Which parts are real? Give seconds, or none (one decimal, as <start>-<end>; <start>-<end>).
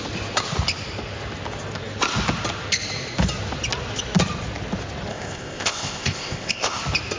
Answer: 0.0-5.1; 6.8-7.2